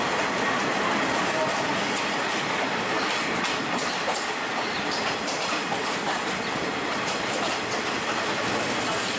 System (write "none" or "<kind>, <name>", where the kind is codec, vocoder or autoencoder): none